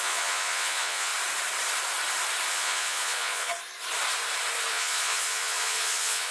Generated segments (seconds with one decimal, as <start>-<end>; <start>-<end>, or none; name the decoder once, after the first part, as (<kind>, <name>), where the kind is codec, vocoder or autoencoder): 0.0-1.1 (vocoder, Vocos); 2.5-3.5; 4.7-6.3